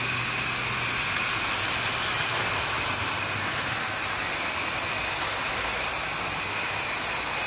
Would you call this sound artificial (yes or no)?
no